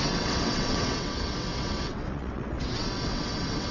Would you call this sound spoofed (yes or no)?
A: yes